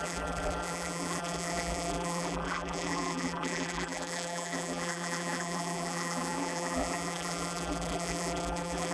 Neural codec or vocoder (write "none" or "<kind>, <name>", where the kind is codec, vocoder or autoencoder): vocoder, BigVGAN v2